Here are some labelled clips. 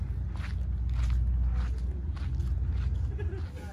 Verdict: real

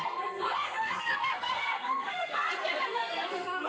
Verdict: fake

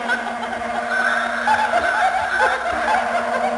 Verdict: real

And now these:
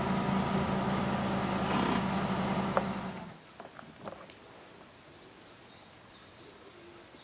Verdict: real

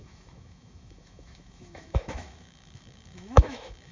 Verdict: fake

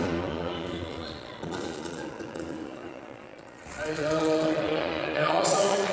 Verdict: fake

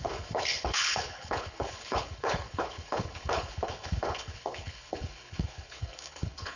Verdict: fake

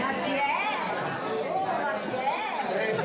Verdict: real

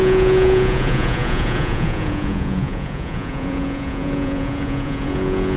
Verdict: fake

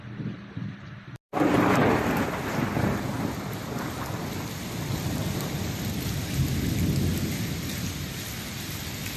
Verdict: real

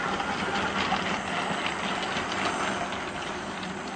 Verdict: real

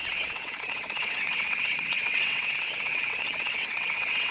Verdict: fake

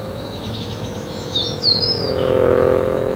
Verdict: fake